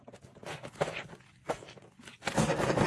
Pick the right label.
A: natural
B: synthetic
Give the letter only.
A